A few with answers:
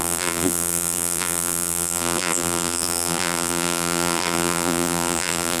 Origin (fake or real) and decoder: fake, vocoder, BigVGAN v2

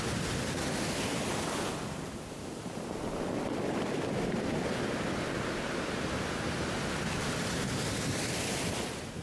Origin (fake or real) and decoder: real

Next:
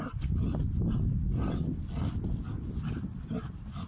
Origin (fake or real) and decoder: real